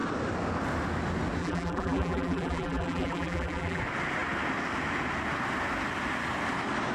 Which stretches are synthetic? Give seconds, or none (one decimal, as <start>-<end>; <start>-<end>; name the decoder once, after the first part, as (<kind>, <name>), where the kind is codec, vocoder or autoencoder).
1.4-3.8 (vocoder, BigVGAN v2)